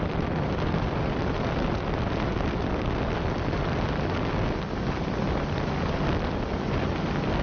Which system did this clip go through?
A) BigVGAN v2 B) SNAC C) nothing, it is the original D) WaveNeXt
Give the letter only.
A